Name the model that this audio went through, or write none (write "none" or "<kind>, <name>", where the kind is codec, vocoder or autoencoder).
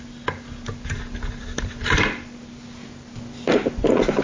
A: none